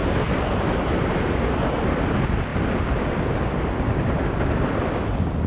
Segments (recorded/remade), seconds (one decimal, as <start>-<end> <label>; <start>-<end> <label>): 0.0-2.5 recorded; 2.5-4.3 remade; 4.3-5.5 recorded